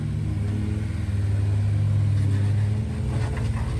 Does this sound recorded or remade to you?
recorded